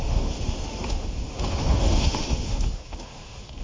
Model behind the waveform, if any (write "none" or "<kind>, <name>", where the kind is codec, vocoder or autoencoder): autoencoder, DAC-VAE